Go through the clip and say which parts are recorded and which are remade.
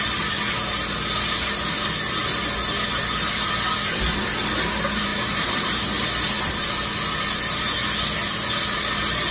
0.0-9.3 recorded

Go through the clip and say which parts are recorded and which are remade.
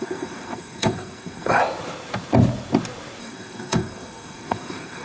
0.0-1.6 remade; 1.6-3.2 recorded; 3.2-5.0 remade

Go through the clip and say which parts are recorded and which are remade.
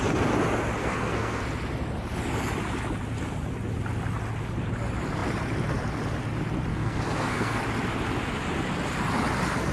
0.0-0.8 recorded; 0.8-1.4 remade; 1.4-6.7 recorded; 6.7-7.6 remade; 7.6-9.7 recorded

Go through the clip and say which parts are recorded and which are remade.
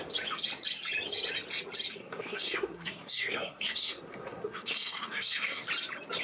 0.0-2.0 recorded; 2.0-5.7 remade; 5.7-6.2 recorded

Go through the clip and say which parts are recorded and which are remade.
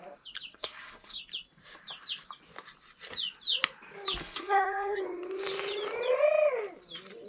0.0-0.5 recorded; 0.5-1.2 remade; 1.2-4.2 recorded; 4.2-5.0 remade; 5.0-7.3 recorded